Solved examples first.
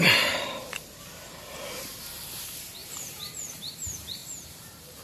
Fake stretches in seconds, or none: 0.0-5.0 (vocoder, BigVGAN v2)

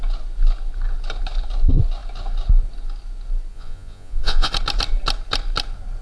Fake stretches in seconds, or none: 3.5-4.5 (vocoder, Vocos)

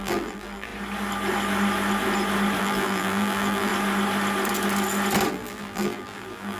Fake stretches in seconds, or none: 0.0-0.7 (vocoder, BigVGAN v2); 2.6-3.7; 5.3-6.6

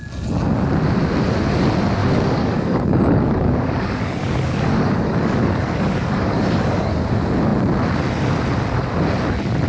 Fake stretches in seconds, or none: 2.0-6.9 (codec, DAC)

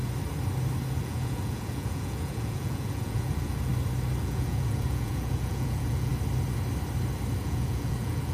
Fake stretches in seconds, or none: 1.0-3.7 (vocoder, Vocos); 4.2-6.1; 7.4-8.3

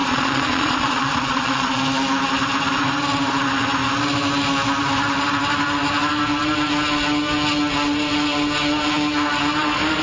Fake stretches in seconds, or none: 0.0-1.8 (vocoder, Vocos)